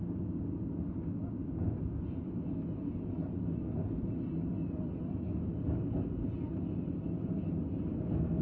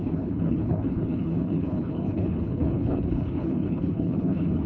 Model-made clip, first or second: second